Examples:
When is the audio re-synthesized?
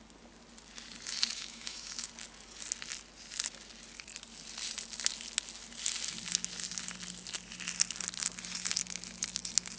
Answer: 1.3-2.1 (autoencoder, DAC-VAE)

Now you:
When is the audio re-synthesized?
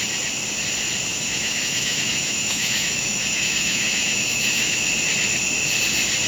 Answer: 1.1-4.9 (autoencoder, DAC-VAE)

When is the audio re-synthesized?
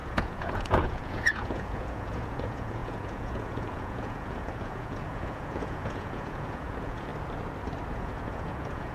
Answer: 0.0-7.1 (vocoder, Vocos); 7.9-8.9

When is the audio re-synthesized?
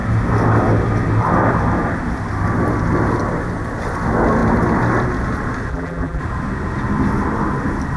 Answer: 5.7-6.2 (vocoder, BigVGAN v2)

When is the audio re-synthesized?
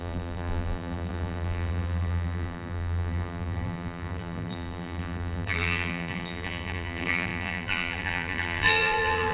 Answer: 0.0-9.3 (vocoder, BigVGAN v2)